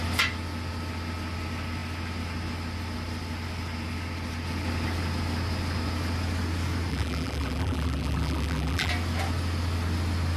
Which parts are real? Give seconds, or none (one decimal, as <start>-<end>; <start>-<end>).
0.0-6.9; 8.9-10.4